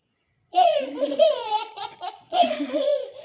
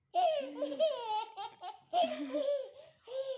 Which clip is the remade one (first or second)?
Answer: first